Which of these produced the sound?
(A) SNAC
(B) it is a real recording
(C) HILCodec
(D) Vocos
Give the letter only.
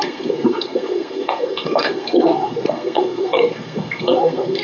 A